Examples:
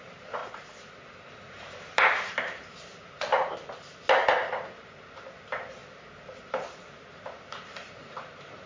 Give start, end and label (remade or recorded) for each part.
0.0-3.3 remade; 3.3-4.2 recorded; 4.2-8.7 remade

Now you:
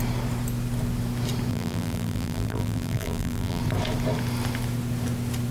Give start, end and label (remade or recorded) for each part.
0.0-1.5 recorded; 1.5-3.6 remade; 3.6-5.5 recorded

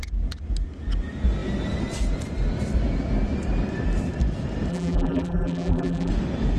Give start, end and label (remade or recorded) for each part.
0.0-4.7 recorded; 4.7-6.1 remade; 6.1-6.6 recorded

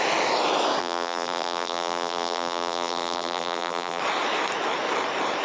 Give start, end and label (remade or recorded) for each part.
0.0-0.8 recorded; 0.8-4.0 remade; 4.0-5.4 recorded